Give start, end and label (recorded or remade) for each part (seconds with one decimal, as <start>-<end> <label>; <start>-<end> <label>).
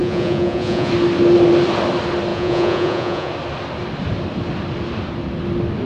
0.0-0.9 remade; 0.9-2.3 recorded; 2.3-3.3 remade; 3.3-5.9 recorded